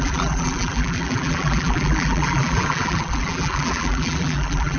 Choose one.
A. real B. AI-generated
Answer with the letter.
B